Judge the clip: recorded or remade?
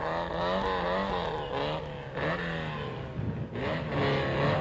recorded